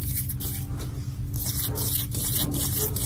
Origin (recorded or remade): recorded